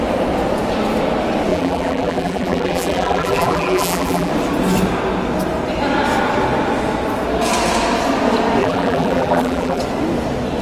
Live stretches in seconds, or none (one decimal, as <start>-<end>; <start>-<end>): 0.0-1.5; 4.3-8.6; 9.8-10.6